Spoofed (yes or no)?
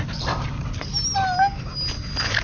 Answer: no